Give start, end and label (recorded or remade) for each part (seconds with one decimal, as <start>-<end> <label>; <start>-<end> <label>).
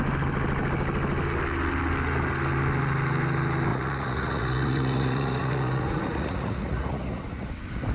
0.0-3.7 recorded; 3.7-7.5 remade; 7.5-7.9 recorded